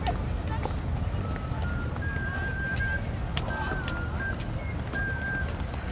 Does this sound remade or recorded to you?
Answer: recorded